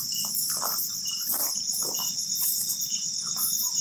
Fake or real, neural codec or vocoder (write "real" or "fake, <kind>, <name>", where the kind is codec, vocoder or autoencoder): real